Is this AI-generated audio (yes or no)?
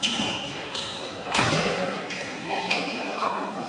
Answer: yes